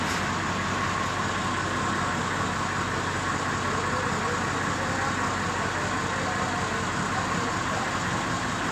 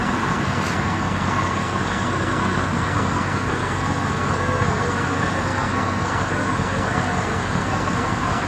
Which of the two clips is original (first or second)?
first